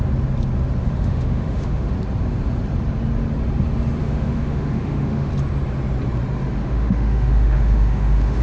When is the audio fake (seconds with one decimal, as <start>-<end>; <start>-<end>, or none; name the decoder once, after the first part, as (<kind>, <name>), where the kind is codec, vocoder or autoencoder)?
0.8-1.9 (autoencoder, DAC-VAE); 4.0-5.3; 6.6-8.4